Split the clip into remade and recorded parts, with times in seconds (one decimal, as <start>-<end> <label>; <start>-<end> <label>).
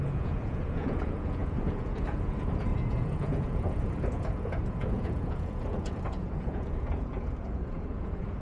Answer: 0.0-8.4 remade